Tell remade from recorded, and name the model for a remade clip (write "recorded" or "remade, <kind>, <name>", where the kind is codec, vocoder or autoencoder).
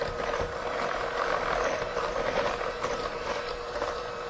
remade, vocoder, BigVGAN v2